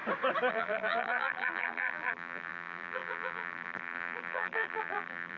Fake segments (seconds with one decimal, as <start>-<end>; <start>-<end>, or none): 0.5-5.4